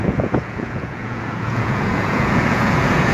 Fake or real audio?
fake